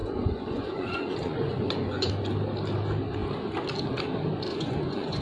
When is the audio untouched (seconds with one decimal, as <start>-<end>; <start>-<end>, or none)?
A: 2.1-4.5